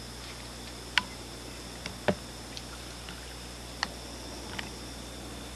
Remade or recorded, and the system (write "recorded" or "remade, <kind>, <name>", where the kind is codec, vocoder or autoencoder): recorded